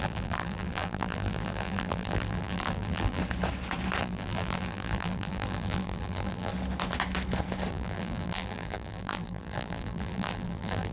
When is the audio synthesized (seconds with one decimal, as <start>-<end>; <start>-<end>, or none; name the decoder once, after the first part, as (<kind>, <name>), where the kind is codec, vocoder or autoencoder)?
0.0-3.2 (vocoder, BigVGAN v2); 4.0-6.5; 7.7-10.9